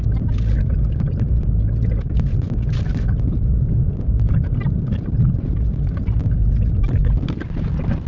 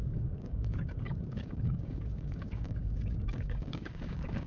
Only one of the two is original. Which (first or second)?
first